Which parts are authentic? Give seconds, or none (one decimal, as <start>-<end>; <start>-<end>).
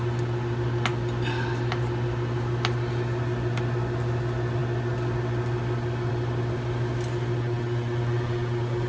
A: 0.0-8.9